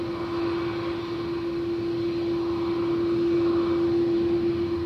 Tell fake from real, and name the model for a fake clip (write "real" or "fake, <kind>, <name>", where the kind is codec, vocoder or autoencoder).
real